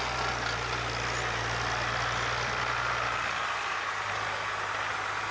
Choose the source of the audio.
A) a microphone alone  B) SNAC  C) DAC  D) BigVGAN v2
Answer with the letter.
A